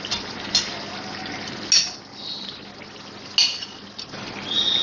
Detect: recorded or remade recorded